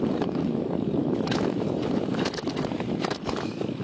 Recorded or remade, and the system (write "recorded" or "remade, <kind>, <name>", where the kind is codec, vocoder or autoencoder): remade, autoencoder, DAC-VAE